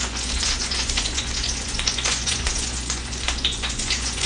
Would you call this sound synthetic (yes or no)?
yes